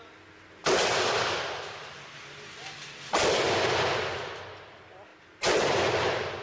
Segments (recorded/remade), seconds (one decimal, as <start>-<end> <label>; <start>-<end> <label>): 0.0-6.4 recorded

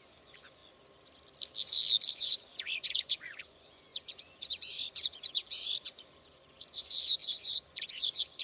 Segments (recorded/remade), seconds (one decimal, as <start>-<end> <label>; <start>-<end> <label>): 0.0-0.6 remade; 0.6-2.1 recorded; 2.1-8.4 remade

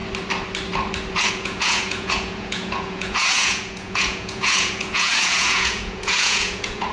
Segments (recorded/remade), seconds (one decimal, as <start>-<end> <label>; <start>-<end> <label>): 0.0-1.3 recorded; 1.3-6.9 remade

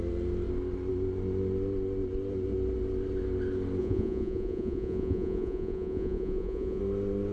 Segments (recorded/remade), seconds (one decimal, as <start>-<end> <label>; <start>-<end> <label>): 0.0-3.8 recorded; 3.8-6.8 remade; 6.8-7.3 recorded

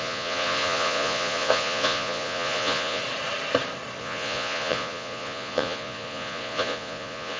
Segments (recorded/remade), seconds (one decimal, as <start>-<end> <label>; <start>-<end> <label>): 0.0-3.0 remade; 3.0-4.0 recorded; 4.0-7.4 remade

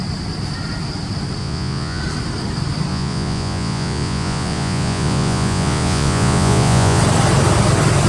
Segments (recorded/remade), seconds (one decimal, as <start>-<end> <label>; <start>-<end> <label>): 0.0-1.4 recorded; 1.4-2.0 remade; 2.0-2.9 recorded; 2.9-7.0 remade; 7.0-8.1 recorded

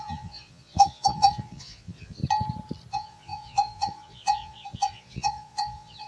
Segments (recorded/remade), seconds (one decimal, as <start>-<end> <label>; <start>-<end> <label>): 0.0-2.2 remade; 2.2-2.9 recorded; 2.9-6.1 remade

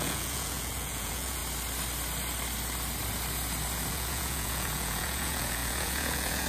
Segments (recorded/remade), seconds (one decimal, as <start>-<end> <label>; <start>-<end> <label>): 0.0-1.4 remade; 1.4-3.9 recorded; 3.9-6.5 remade